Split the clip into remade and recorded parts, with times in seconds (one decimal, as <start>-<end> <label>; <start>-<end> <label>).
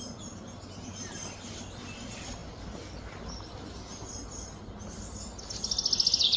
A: 0.0-6.4 recorded